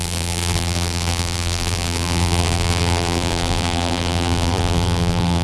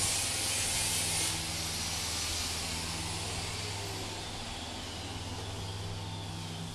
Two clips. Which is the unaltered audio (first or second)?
second